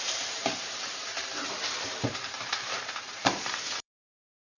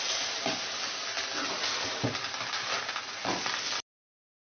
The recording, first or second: second